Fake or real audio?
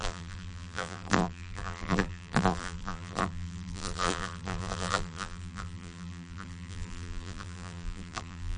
fake